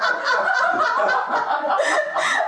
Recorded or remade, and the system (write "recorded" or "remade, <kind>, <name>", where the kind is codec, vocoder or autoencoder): remade, vocoder, Vocos